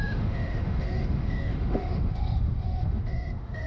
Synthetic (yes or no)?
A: yes